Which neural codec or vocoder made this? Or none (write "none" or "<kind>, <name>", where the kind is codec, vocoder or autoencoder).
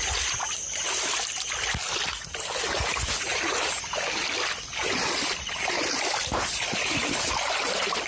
none